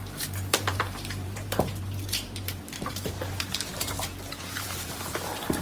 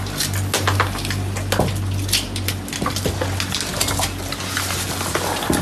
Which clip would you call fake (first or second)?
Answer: first